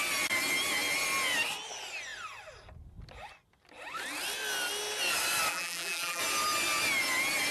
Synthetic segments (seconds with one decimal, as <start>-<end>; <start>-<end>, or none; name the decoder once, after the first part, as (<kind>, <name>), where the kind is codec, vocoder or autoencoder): 5.5-6.2 (vocoder, BigVGAN v2)